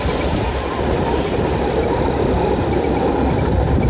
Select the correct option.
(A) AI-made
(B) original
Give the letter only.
A